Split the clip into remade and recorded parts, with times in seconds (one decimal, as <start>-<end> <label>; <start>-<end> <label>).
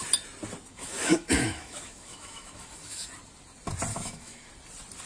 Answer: 0.0-0.7 recorded; 0.7-3.1 remade; 3.1-3.9 recorded; 3.9-4.5 remade; 4.5-5.1 recorded